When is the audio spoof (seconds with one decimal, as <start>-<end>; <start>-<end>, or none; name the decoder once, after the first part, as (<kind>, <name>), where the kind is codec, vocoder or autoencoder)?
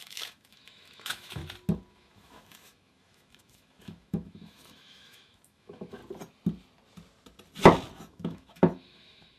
0.0-1.4 (autoencoder, DAC-VAE); 1.9-6.0; 8.0-9.4